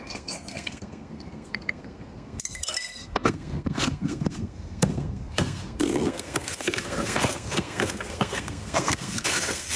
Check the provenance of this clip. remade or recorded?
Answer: remade